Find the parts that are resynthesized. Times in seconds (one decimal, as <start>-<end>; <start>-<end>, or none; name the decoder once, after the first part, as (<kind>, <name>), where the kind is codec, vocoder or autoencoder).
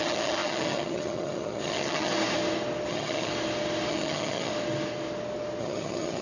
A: 0.0-2.1 (vocoder, HiFi-GAN); 2.9-3.3; 3.9-4.5; 5.6-6.2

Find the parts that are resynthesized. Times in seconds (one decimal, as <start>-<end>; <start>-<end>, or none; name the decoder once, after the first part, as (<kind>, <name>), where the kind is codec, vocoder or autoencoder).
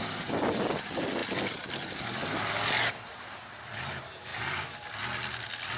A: 4.3-4.9 (vocoder, BigVGAN v2)